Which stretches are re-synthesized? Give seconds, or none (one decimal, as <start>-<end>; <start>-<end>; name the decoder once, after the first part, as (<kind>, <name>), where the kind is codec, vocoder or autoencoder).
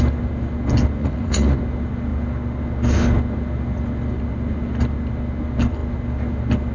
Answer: 1.0-1.6 (vocoder, Vocos)